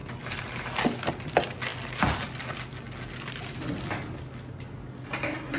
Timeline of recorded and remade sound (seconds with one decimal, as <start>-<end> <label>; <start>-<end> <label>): 0.0-5.6 recorded